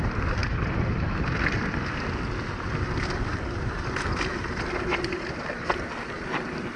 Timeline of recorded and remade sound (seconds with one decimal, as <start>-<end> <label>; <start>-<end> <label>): 0.0-6.8 recorded